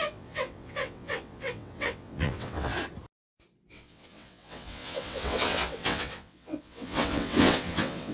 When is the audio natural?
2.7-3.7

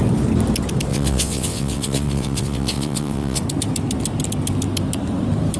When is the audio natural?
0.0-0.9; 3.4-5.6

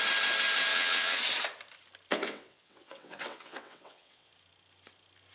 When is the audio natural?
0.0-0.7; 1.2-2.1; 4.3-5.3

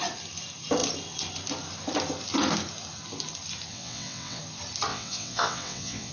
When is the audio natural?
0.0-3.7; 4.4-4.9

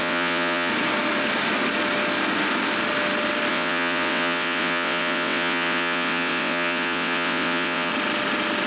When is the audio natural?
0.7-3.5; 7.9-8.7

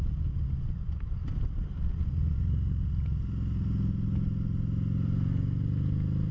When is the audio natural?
0.0-6.3